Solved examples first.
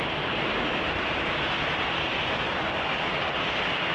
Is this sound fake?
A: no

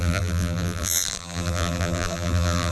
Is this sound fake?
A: yes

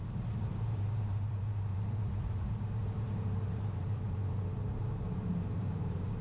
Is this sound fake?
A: yes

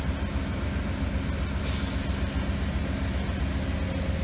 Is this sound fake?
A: no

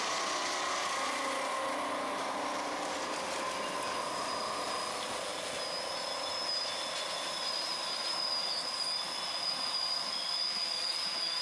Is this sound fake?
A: no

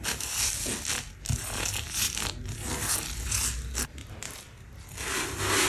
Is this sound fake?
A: no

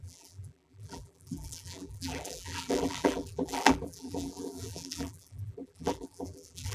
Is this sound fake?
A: yes